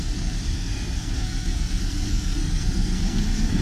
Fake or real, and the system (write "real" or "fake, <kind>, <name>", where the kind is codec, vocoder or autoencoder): fake, codec, SNAC